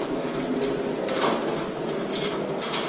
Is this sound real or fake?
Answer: real